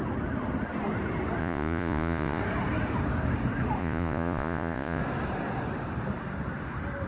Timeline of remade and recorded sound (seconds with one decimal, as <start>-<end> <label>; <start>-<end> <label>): 0.0-1.4 recorded; 1.4-2.4 remade; 2.4-3.8 recorded; 3.8-5.0 remade; 5.0-7.1 recorded